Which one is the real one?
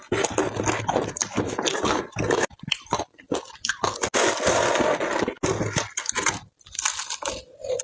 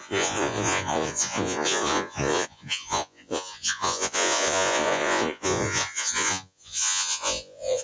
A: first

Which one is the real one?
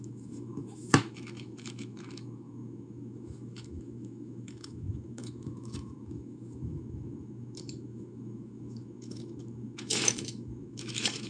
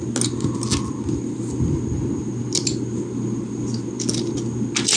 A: second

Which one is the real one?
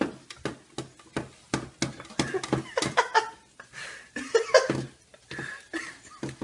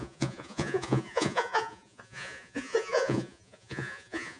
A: first